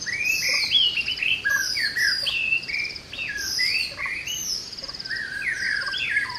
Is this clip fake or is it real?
fake